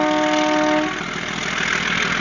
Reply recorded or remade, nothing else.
recorded